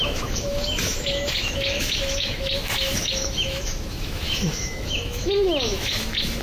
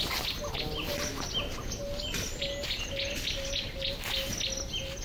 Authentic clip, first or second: second